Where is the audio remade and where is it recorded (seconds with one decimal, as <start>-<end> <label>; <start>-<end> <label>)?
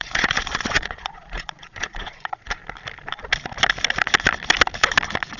0.0-2.6 remade; 2.6-5.4 recorded